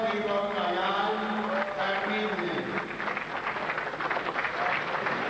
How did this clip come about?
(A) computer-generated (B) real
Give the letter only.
B